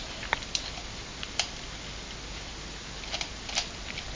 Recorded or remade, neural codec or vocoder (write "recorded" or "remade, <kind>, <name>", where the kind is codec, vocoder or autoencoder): recorded